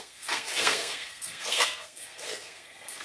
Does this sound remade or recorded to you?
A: remade